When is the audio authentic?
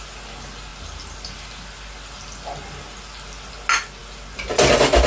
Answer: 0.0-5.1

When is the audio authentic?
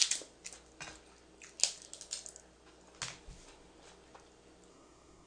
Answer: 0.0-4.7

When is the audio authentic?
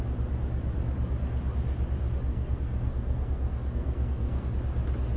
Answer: 0.0-2.3; 4.5-5.2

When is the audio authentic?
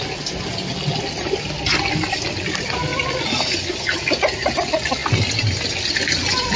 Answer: 0.0-6.6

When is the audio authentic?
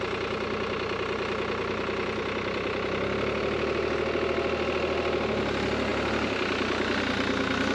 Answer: 0.0-7.7